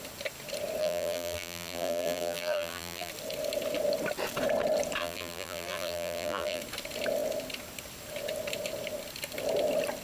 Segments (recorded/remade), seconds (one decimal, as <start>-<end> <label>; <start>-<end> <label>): 0.0-0.8 recorded; 0.8-3.1 remade; 3.1-5.0 recorded; 5.0-6.6 remade; 6.6-10.0 recorded